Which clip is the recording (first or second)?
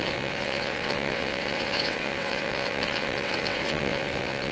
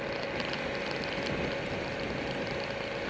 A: second